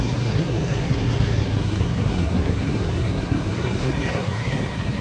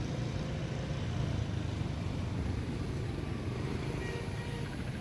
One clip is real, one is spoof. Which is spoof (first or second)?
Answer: first